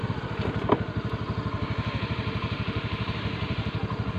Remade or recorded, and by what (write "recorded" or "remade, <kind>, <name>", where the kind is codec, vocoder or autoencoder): recorded